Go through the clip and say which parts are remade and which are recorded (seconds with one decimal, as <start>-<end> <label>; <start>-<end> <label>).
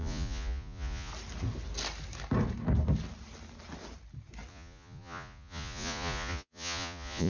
0.0-1.1 remade; 1.1-4.5 recorded; 4.5-7.3 remade